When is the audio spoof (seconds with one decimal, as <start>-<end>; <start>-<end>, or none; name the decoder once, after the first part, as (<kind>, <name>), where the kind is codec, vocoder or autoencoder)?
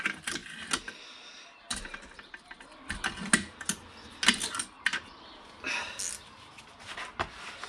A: none